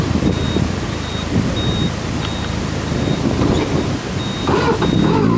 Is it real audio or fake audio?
real